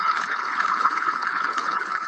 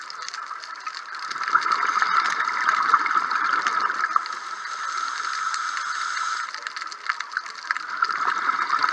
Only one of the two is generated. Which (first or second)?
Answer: first